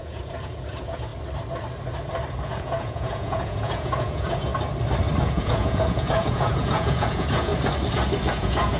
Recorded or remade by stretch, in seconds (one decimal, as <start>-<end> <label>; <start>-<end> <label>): 0.0-1.1 remade; 1.1-2.4 recorded; 2.4-4.5 remade; 4.5-5.2 recorded; 5.2-7.5 remade; 7.5-8.3 recorded; 8.3-8.8 remade